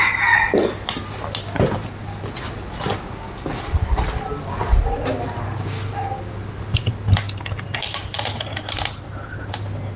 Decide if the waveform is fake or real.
real